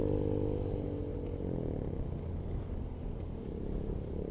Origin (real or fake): real